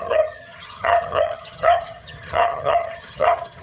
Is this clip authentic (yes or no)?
no